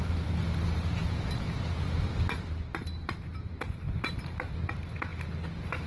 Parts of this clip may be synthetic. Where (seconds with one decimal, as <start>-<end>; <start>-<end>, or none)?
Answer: none